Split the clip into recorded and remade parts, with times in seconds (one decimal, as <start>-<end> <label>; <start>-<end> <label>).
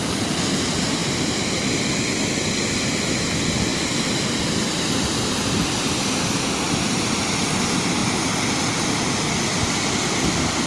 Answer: 0.0-10.7 recorded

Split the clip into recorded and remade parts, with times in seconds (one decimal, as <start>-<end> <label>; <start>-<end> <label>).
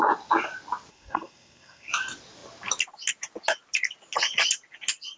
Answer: 0.0-0.9 recorded; 0.9-1.9 remade; 1.9-5.2 recorded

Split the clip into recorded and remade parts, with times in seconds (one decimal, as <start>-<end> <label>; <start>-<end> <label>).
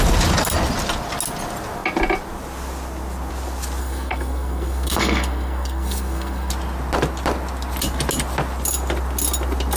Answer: 0.0-3.8 recorded; 3.8-6.5 remade; 6.5-9.8 recorded